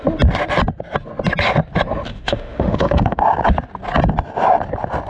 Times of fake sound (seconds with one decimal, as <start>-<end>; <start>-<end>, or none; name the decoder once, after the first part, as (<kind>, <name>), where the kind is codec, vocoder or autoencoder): 2.1-3.2 (autoencoder, DAC-VAE)